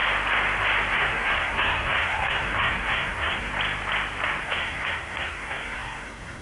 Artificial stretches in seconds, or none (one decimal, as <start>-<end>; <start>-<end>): 0.9-3.5; 4.4-6.4